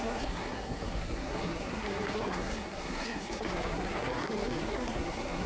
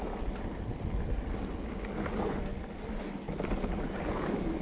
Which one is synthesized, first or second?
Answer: first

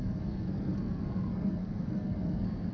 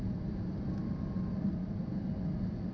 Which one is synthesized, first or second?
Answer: first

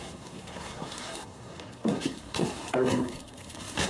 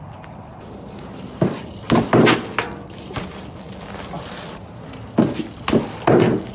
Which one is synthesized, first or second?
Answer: first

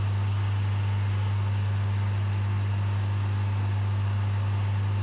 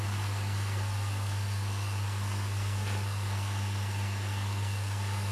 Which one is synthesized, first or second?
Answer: second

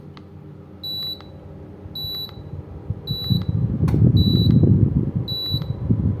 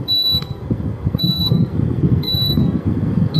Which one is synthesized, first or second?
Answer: second